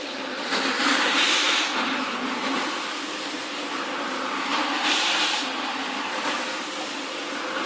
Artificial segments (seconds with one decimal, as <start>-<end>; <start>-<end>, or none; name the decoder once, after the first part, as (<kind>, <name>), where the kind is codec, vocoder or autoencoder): none